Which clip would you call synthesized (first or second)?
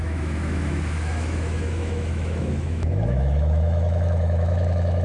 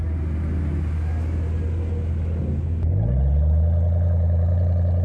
first